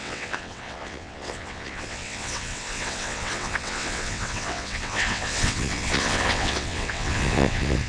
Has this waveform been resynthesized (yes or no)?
yes